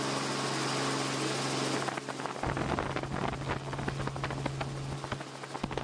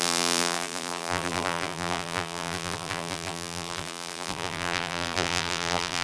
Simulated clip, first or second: second